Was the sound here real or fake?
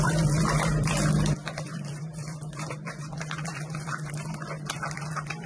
fake